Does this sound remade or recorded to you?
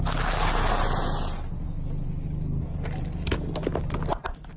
recorded